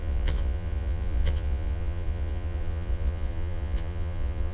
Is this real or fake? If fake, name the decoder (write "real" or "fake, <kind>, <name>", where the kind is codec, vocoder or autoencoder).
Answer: fake, vocoder, Vocos